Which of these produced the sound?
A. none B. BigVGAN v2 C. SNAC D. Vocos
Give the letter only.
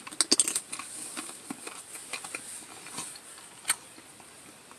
A